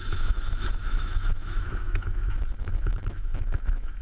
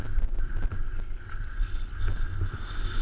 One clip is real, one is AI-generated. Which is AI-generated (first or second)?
first